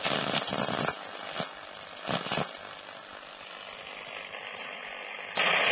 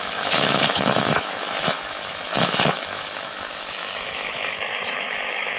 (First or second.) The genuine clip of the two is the first